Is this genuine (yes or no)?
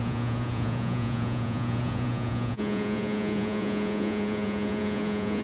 no